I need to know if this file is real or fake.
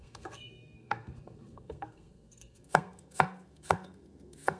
fake